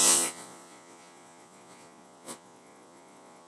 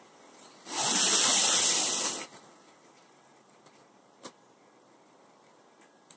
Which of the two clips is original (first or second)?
second